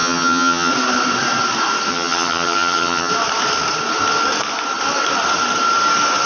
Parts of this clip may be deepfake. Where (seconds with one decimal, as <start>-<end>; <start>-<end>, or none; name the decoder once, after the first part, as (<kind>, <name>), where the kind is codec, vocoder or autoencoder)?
0.0-0.7 (vocoder, HiFi-GAN); 1.9-3.1